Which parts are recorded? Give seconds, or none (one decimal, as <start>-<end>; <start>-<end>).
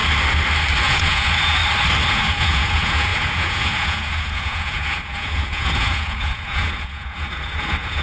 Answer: 0.0-0.8; 1.6-2.1